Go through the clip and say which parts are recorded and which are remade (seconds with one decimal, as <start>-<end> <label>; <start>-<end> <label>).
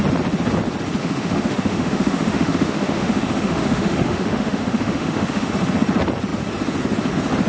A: 0.0-1.0 recorded; 1.0-5.5 remade; 5.5-7.5 recorded